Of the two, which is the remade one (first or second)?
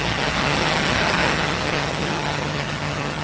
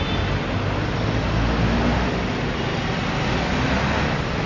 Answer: first